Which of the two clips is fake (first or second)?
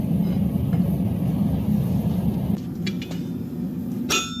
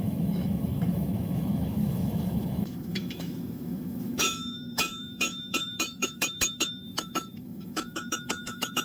second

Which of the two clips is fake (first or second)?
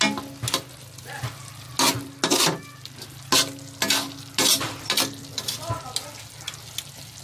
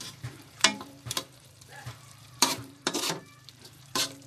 second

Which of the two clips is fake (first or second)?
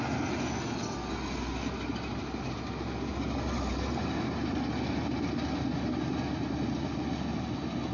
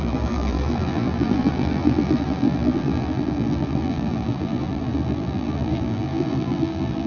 second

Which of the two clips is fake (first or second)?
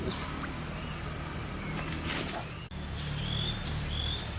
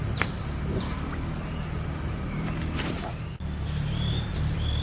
second